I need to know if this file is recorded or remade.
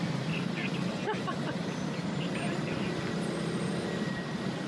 recorded